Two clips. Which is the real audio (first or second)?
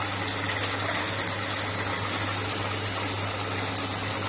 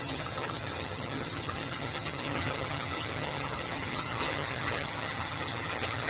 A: first